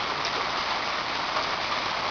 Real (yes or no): yes